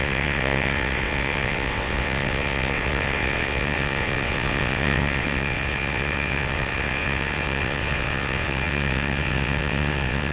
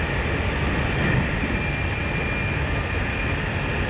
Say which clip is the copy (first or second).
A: first